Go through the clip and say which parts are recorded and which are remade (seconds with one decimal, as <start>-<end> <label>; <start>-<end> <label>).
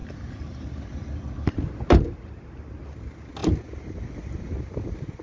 0.0-2.6 remade; 2.6-5.2 recorded